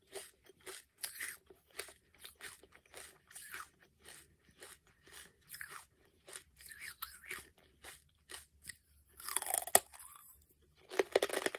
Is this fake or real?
real